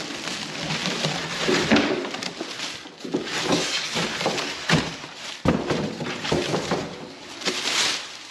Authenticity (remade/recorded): remade